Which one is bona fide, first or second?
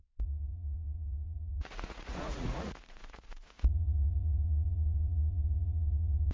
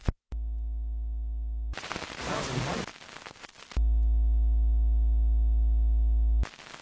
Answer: second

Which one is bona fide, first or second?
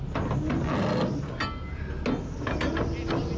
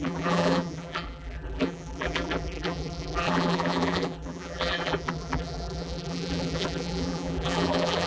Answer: first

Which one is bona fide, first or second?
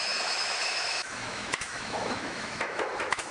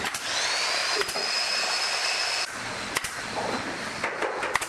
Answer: second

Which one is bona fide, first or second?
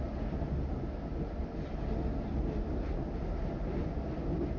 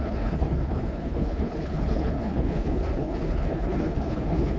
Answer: first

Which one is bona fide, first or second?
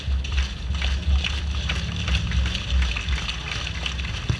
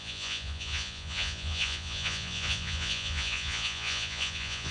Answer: first